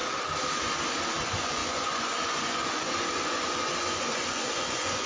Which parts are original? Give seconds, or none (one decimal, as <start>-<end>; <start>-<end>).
0.0-1.2